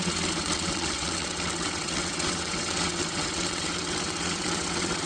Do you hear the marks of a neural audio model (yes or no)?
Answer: yes